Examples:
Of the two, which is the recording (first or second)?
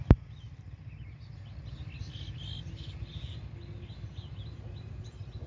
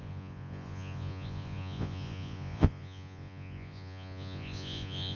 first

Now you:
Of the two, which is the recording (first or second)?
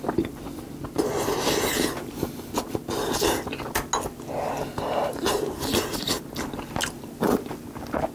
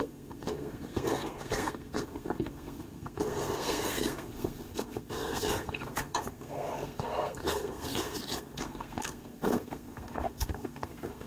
first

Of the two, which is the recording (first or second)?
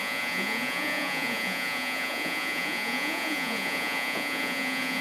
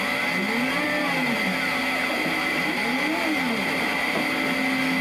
second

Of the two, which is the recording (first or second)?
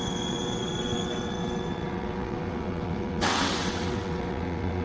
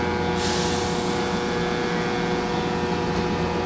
second